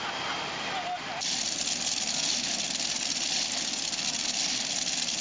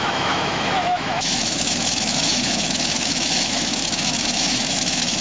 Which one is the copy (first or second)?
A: second